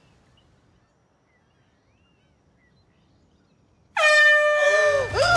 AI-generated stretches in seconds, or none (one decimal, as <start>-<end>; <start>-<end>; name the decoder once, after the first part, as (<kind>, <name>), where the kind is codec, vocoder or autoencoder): none